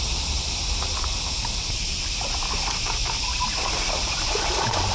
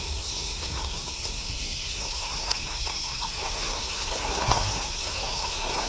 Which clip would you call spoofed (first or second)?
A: second